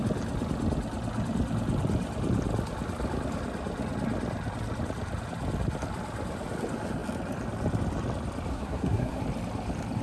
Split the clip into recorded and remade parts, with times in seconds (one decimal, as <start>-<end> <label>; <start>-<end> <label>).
0.0-8.5 recorded; 8.5-9.2 remade; 9.2-10.0 recorded